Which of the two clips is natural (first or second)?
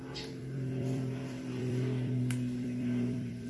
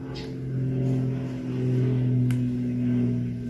second